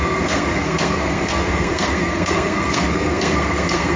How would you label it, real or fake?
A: fake